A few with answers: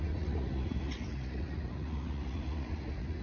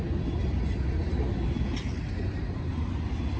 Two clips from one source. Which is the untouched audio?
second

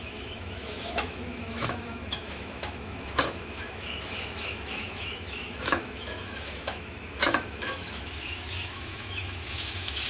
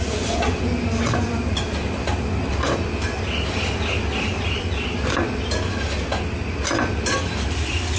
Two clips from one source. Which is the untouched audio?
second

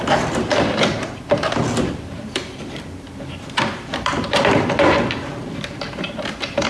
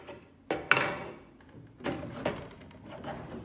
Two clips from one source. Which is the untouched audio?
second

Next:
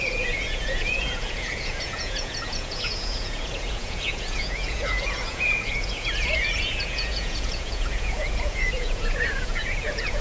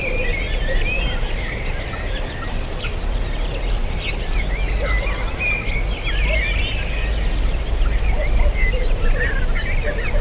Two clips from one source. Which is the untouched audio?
second